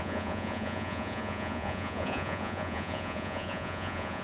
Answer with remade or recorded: remade